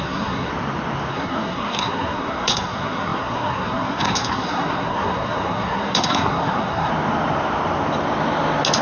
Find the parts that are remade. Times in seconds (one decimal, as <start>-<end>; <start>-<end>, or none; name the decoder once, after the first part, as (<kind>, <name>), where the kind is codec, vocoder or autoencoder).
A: 0.0-0.5 (codec, SNAC); 1.1-6.9